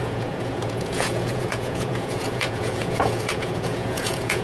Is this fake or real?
fake